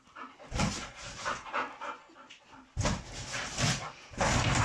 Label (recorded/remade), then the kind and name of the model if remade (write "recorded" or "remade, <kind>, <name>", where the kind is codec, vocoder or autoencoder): recorded